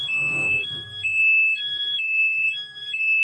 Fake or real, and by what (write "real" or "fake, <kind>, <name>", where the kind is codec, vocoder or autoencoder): fake, codec, SNAC